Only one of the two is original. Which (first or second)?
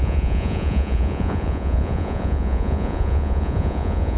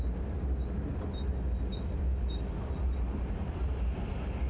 second